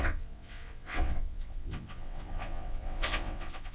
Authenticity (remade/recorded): remade